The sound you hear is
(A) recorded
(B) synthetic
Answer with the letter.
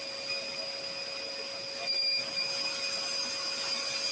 A